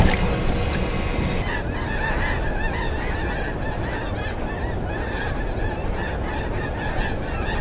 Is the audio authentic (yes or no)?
yes